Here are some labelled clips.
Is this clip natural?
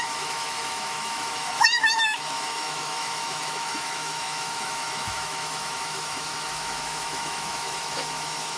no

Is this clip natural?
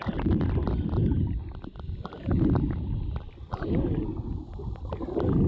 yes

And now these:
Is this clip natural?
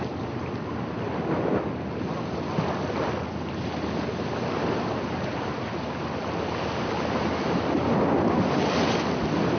yes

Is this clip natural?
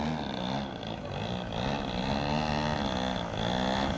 yes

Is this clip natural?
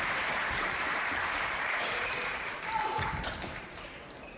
no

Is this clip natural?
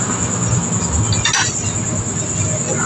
yes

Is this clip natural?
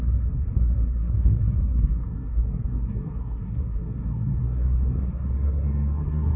no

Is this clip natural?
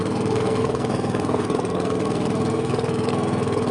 no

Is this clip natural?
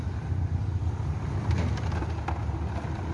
yes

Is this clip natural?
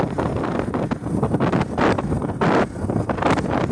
yes